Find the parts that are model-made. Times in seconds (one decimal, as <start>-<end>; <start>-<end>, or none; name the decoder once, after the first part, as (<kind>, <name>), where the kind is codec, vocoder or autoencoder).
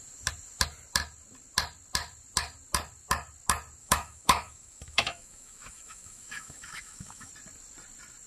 3.8-7.3 (autoencoder, DAC-VAE)